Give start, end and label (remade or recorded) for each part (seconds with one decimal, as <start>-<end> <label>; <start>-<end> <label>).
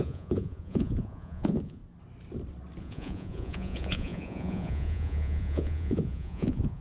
0.0-1.8 remade; 1.8-2.8 recorded; 2.8-6.8 remade